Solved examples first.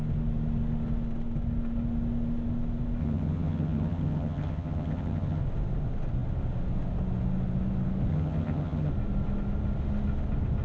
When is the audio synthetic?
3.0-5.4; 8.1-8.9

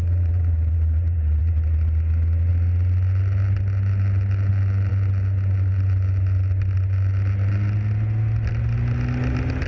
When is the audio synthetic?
0.0-1.4

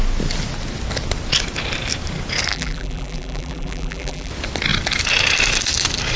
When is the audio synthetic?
2.5-4.3

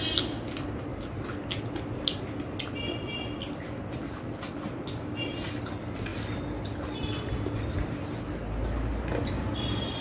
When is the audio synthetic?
none

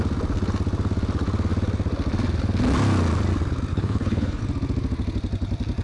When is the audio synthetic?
3.7-4.4

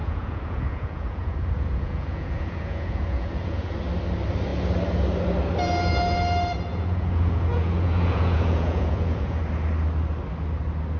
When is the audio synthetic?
0.0-3.7; 6.7-9.4

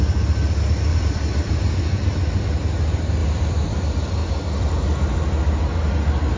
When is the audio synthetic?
0.9-1.5; 3.2-3.8; 4.2-4.7